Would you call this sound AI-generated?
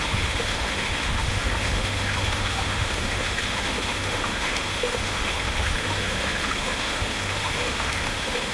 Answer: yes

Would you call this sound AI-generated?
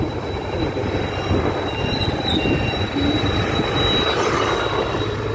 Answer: no